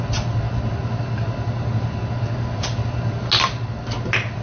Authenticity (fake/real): real